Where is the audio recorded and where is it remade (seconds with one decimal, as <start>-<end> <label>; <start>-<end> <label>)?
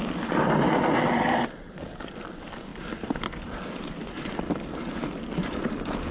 0.0-6.1 recorded